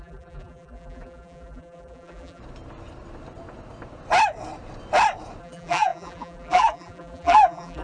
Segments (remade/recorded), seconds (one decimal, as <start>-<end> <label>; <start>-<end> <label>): 0.0-2.4 remade; 2.4-5.4 recorded; 5.4-7.8 remade